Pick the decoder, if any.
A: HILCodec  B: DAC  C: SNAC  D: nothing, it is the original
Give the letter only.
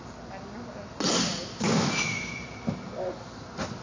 D